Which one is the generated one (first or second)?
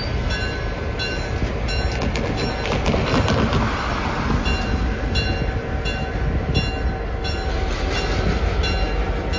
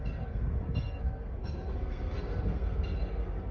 second